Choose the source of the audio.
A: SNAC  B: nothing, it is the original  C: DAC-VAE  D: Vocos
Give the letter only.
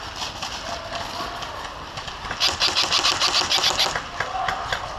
B